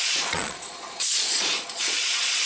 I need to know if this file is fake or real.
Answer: fake